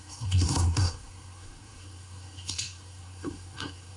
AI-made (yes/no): yes